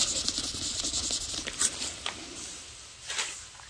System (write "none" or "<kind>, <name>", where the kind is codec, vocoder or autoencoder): none